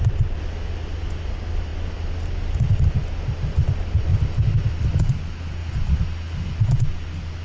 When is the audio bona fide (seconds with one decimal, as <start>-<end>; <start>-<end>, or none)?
0.0-7.4